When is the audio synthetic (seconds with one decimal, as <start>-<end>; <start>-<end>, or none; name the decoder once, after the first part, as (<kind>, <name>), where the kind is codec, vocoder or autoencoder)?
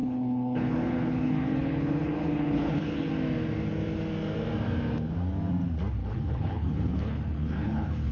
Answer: 0.0-3.1 (codec, HILCodec); 6.0-8.1